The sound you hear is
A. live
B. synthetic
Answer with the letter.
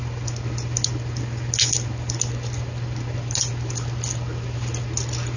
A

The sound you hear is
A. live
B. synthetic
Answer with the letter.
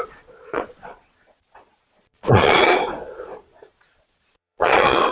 B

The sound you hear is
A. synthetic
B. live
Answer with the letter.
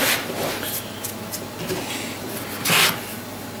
B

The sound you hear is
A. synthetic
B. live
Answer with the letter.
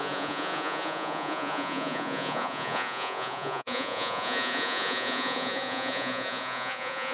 A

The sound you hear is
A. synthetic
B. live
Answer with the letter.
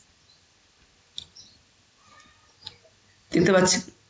B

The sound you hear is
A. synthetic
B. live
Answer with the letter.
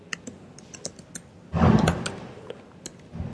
B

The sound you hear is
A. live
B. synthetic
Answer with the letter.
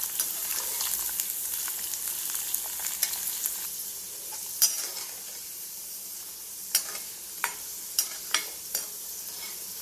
A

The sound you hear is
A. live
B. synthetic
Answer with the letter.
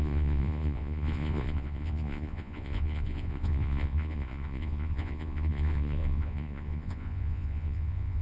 B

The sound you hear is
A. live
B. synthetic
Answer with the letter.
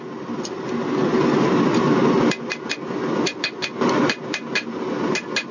A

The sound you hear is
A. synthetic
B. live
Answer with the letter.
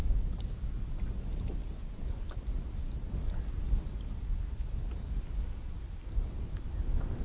B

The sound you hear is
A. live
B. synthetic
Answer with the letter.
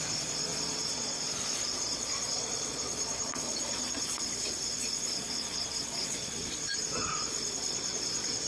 B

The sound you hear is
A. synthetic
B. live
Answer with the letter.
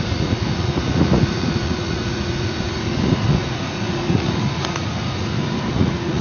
A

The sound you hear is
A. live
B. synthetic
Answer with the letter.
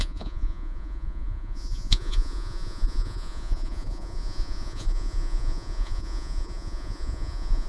B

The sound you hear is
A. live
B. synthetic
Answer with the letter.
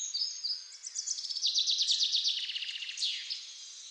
A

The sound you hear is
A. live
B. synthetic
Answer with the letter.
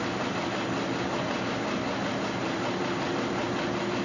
A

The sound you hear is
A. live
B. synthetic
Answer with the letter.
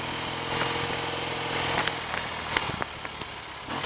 A